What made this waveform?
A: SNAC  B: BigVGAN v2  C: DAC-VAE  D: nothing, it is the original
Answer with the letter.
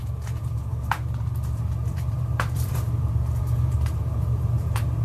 B